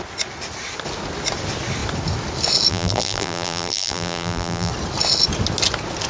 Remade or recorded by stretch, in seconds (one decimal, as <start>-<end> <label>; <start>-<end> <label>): 0.0-2.7 recorded; 2.7-4.7 remade; 4.7-6.1 recorded